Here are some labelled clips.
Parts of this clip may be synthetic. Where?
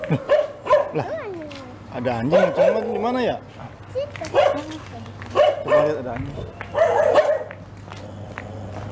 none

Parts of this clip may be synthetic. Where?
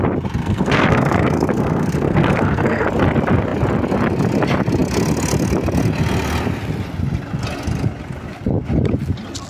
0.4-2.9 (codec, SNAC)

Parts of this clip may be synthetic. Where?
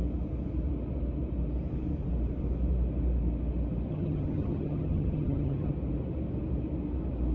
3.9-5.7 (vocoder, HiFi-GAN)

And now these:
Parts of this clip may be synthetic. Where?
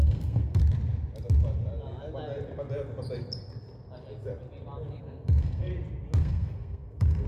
0.0-0.6 (codec, SNAC); 5.0-5.7; 6.2-7.3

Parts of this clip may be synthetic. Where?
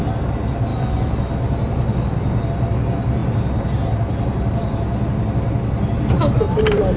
0.7-1.3 (autoencoder, DAC-VAE)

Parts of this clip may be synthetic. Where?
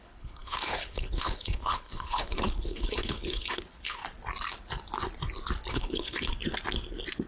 0.0-4.0 (codec, HILCodec); 5.7-6.3